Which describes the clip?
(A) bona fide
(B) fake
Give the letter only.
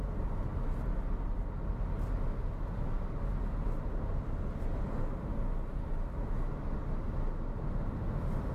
A